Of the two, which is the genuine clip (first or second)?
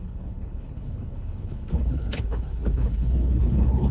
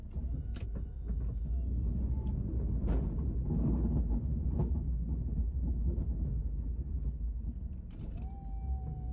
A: second